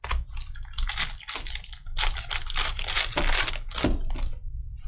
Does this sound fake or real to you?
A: real